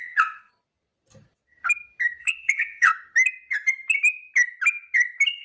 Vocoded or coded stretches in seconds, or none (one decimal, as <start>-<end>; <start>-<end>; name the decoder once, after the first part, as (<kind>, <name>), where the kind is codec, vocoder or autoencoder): 0.0-0.5 (vocoder, WaveNeXt); 2.2-2.9